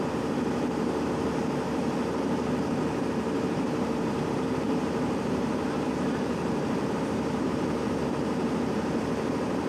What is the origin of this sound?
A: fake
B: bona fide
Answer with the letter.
A